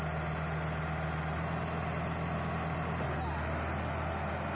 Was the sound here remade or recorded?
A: recorded